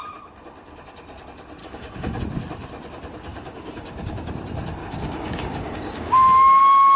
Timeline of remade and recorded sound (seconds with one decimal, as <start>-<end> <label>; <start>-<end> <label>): 0.0-1.6 recorded; 1.6-2.2 remade; 2.2-3.3 recorded; 3.3-4.3 remade; 4.3-4.8 recorded; 4.8-6.6 remade; 6.6-7.0 recorded